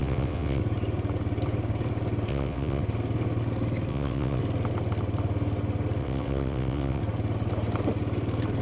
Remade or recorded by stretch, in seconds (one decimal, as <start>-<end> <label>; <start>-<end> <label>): 0.0-0.6 remade; 0.6-2.3 recorded; 2.3-2.8 remade; 2.8-3.9 recorded; 3.9-4.4 remade; 4.4-6.0 recorded; 6.0-7.0 remade; 7.0-8.6 recorded